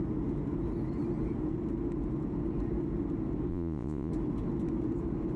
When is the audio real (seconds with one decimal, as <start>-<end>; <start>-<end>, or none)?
0.0-3.5; 4.1-5.4